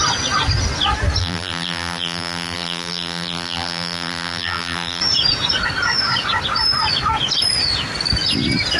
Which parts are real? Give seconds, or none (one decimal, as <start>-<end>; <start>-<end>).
0.0-1.2; 5.0-8.8